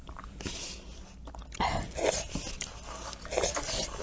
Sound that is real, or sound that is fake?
real